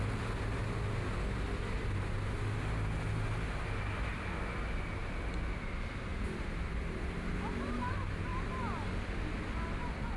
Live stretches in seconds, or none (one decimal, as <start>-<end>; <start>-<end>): 0.0-10.2